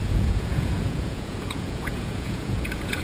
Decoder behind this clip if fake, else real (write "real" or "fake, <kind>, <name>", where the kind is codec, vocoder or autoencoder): fake, vocoder, Vocos